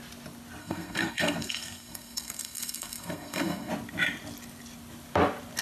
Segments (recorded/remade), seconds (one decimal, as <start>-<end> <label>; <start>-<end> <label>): 0.0-0.6 recorded; 0.6-3.7 remade; 3.7-5.6 recorded